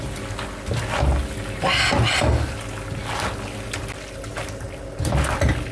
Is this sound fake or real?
real